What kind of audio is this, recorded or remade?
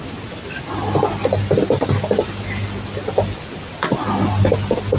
recorded